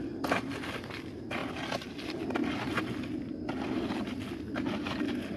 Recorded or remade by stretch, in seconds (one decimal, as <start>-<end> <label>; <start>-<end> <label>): 0.0-5.4 recorded